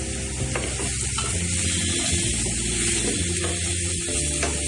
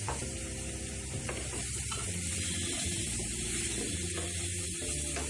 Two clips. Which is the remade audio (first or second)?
second